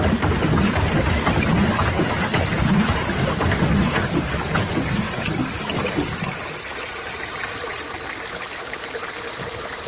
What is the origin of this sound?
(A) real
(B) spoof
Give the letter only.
A